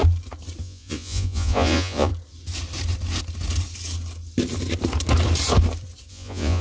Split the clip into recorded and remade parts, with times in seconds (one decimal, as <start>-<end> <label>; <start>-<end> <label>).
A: 0.0-0.6 recorded; 0.6-2.1 remade; 2.1-6.1 recorded; 6.1-6.6 remade